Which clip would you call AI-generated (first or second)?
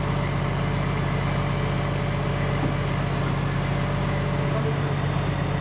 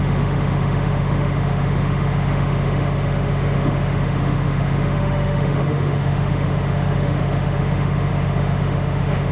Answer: second